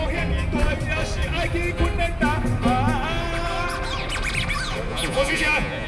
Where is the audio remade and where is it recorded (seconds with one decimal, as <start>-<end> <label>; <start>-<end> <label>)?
0.0-4.9 recorded; 4.9-5.9 remade